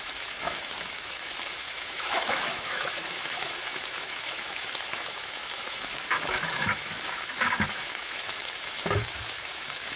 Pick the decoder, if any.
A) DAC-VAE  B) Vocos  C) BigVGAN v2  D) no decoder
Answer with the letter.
A